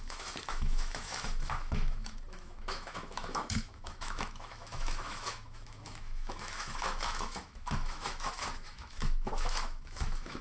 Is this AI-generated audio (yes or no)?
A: yes